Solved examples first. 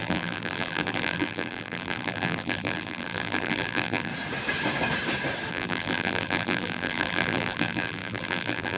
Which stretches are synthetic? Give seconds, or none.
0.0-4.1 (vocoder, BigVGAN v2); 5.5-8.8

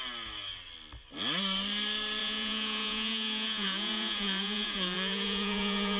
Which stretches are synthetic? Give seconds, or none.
2.2-6.0 (vocoder, Vocos)

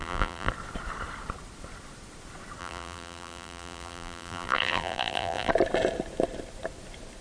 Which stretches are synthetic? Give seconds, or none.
0.0-0.5 (vocoder, BigVGAN v2); 2.6-5.5

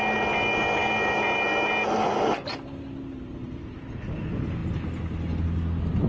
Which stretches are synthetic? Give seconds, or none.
none

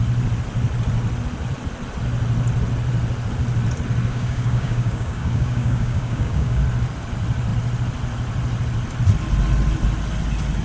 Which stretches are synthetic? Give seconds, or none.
4.1-6.6 (codec, DAC)

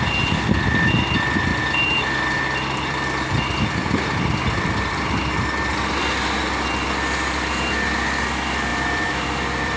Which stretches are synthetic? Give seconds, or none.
1.5-6.2 (vocoder, BigVGAN v2); 8.7-9.8

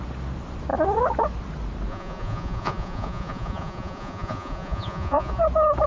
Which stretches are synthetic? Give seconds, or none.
1.9-5.4 (vocoder, Vocos)